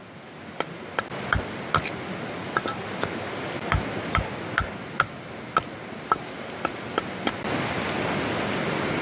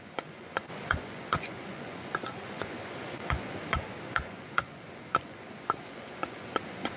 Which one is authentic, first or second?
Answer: first